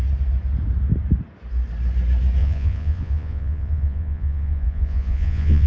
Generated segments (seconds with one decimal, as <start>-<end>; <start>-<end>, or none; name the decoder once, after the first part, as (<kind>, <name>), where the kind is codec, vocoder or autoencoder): 2.4-5.7 (vocoder, Vocos)